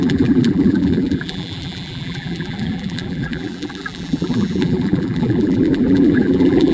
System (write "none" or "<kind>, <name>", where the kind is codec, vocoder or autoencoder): vocoder, BigVGAN v2